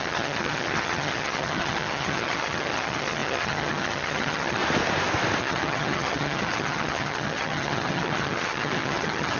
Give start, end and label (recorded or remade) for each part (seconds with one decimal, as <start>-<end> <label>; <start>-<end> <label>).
0.0-4.6 remade; 4.6-5.4 recorded; 5.4-9.4 remade